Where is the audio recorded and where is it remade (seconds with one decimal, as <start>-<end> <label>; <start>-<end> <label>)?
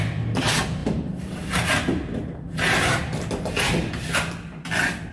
0.0-5.1 remade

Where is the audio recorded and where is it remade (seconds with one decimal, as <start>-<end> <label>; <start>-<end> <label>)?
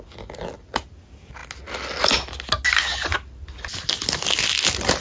0.0-5.0 recorded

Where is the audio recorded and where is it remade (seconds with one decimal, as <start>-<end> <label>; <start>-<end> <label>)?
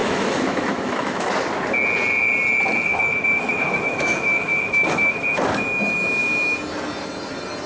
0.0-1.3 remade; 1.3-2.9 recorded; 2.9-5.4 remade; 5.4-7.7 recorded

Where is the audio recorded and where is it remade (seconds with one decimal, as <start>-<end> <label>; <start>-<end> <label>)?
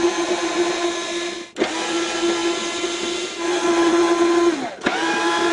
0.0-3.5 recorded; 3.5-4.0 remade; 4.0-5.5 recorded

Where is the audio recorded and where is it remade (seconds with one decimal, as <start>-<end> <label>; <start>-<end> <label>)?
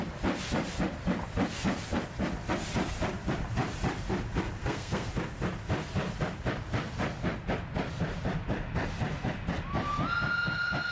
0.0-4.6 recorded; 4.6-5.1 remade; 5.1-10.9 recorded